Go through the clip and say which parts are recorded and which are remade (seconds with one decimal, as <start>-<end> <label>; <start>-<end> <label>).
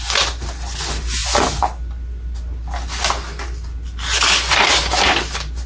0.0-5.7 recorded